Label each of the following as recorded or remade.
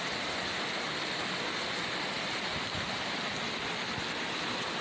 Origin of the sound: recorded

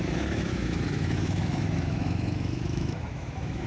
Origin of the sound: remade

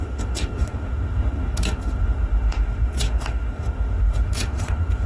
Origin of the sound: remade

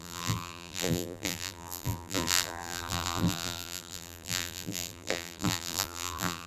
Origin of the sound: remade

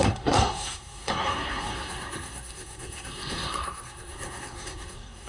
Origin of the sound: remade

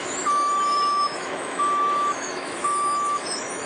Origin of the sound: remade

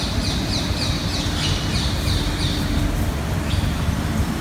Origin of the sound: recorded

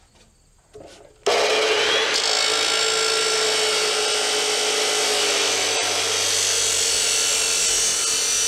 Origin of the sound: recorded